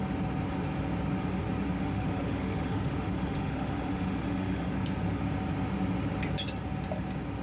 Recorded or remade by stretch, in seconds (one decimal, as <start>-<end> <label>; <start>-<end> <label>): 0.0-1.8 recorded; 1.8-4.7 remade; 4.7-7.4 recorded